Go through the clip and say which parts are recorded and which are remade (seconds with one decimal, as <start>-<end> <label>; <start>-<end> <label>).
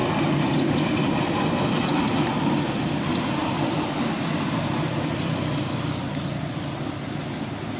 0.0-3.4 recorded; 3.4-5.9 remade; 5.9-7.8 recorded